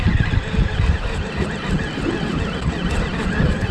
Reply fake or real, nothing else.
real